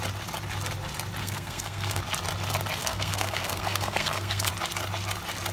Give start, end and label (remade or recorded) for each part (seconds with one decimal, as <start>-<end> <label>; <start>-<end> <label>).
0.0-1.2 recorded; 1.2-2.0 remade; 2.0-2.8 recorded; 2.8-4.5 remade; 4.5-5.5 recorded